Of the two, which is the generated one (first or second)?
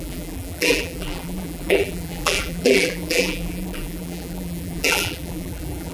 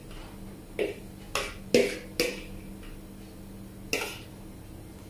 first